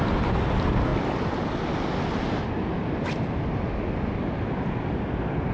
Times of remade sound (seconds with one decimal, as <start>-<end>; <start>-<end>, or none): none